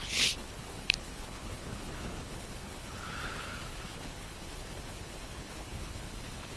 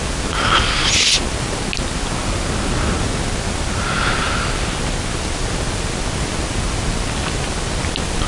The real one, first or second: second